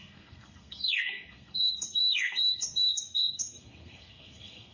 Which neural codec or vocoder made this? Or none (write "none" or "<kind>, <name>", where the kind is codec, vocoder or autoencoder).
codec, SNAC